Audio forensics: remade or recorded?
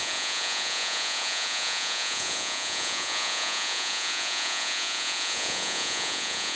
remade